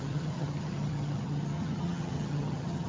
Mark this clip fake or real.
fake